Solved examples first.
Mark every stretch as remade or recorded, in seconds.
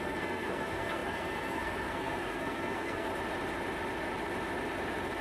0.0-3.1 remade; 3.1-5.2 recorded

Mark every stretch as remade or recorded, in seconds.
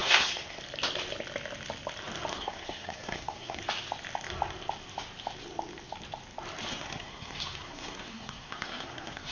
0.0-0.6 remade; 0.6-2.3 recorded; 2.3-3.6 remade; 3.6-6.7 recorded; 6.7-9.3 remade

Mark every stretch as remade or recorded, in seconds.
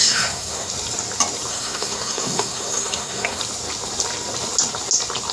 0.0-0.7 remade; 0.7-1.5 recorded; 1.5-3.4 remade; 3.4-5.3 recorded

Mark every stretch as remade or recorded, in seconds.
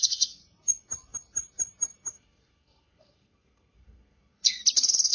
0.0-0.4 remade; 0.4-2.1 recorded; 2.1-4.6 remade; 4.6-5.1 recorded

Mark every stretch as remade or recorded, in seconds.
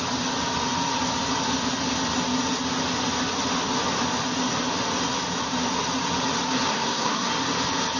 0.0-6.7 recorded; 6.7-7.3 remade; 7.3-8.0 recorded